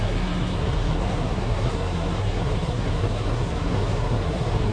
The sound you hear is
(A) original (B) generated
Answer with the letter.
B